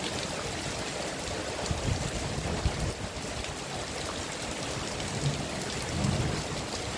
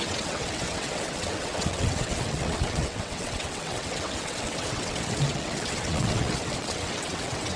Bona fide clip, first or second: first